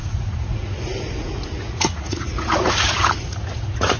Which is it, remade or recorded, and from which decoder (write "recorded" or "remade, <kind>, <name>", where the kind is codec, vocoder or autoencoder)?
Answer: remade, vocoder, Vocos